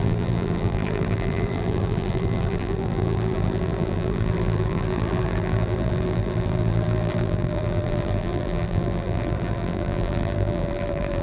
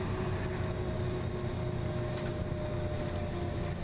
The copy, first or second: first